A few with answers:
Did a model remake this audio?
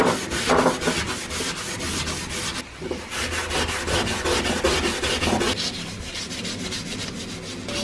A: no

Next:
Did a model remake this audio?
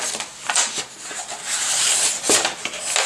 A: no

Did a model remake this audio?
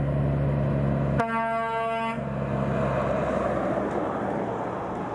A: no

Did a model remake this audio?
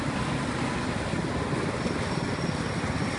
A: no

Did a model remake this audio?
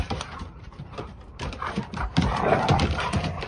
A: yes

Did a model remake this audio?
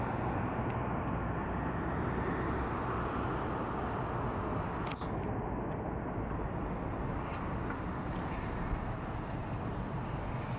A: no